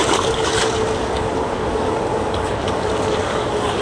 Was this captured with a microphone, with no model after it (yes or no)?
no